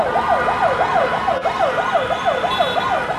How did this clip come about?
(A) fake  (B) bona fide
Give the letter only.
B